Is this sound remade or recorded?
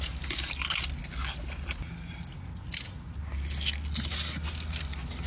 recorded